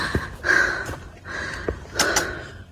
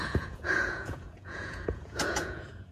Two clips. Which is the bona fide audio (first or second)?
first